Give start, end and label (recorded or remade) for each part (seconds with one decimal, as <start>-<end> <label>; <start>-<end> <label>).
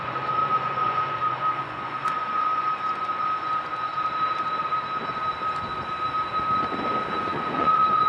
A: 0.0-3.9 remade; 3.9-7.1 recorded; 7.1-8.1 remade